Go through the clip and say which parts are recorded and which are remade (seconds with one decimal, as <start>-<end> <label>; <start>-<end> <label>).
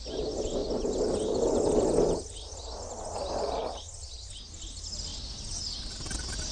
0.0-6.5 recorded